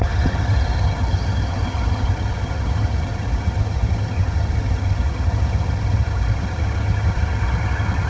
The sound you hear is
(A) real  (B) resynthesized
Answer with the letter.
B